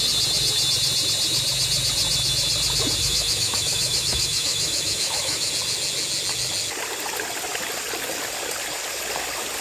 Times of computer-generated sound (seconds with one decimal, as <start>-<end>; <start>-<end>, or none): 3.0-5.5